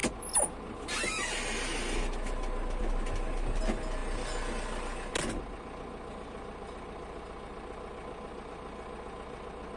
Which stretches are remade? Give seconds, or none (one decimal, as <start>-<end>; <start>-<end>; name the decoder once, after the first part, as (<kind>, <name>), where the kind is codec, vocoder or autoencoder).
none